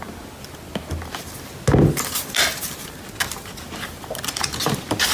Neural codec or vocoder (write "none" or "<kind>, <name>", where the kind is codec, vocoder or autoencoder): none